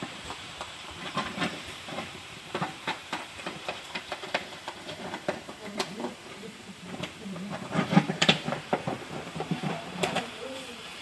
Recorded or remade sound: remade